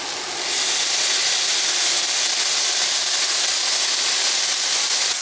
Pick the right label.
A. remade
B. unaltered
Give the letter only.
B